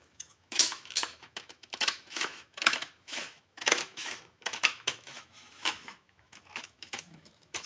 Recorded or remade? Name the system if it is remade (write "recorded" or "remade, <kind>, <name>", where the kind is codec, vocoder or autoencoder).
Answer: remade, autoencoder, DAC-VAE